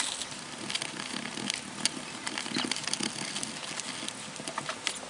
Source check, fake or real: real